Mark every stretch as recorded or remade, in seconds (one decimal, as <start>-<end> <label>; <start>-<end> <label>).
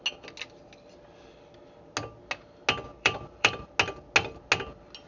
0.0-2.9 recorded; 2.9-3.7 remade; 3.7-5.1 recorded